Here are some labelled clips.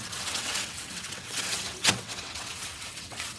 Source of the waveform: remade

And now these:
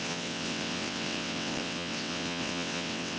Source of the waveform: remade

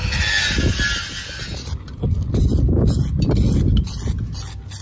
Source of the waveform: recorded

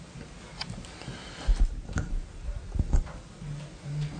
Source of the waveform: recorded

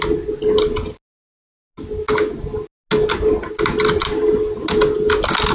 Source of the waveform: recorded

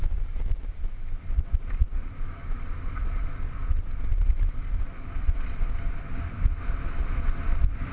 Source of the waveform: recorded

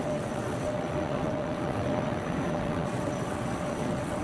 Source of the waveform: remade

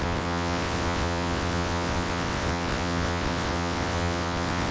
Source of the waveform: remade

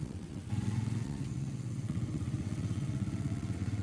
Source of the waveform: remade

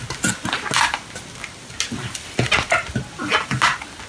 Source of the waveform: recorded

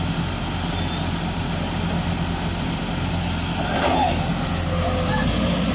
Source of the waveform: recorded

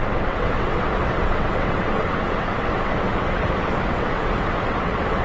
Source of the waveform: remade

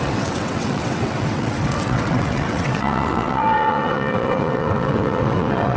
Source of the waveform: remade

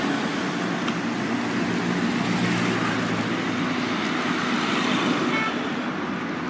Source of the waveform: recorded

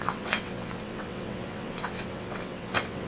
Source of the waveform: remade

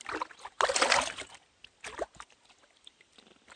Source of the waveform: recorded